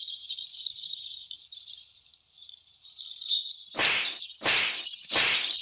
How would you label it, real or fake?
fake